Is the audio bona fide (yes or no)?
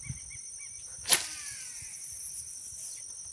yes